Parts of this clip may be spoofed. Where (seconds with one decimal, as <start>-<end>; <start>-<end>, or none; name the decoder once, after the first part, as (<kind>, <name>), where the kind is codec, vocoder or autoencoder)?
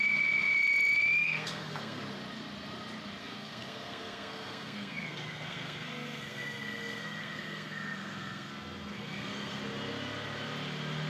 1.2-2.0 (codec, SNAC); 3.2-8.5; 8.9-9.6